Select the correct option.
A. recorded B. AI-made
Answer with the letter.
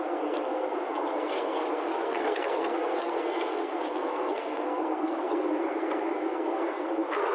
B